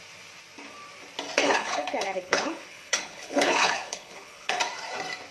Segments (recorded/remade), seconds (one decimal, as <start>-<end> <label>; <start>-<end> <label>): 0.0-1.4 recorded; 1.4-4.6 remade; 4.6-5.3 recorded